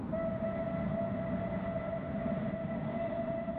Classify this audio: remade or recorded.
recorded